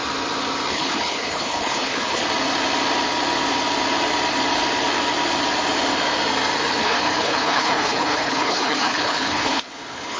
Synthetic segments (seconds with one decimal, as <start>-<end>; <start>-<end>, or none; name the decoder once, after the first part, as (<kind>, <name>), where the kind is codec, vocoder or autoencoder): 0.7-2.2 (codec, HILCodec); 6.8-10.2